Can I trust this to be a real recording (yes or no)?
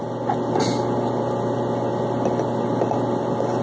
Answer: yes